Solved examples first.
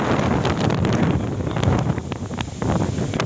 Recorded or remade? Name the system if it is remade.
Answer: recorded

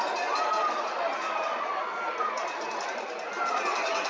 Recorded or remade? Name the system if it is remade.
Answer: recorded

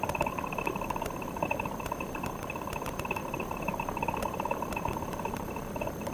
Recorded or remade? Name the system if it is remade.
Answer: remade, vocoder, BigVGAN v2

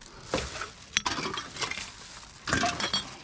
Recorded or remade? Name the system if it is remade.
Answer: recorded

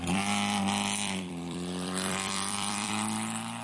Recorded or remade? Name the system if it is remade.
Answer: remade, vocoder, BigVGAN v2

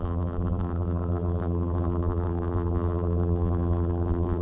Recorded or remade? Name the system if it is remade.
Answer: remade, vocoder, BigVGAN v2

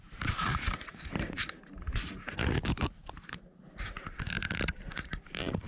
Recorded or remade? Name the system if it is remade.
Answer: remade, vocoder, BigVGAN v2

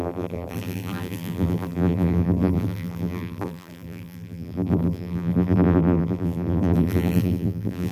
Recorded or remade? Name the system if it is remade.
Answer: remade, vocoder, BigVGAN v2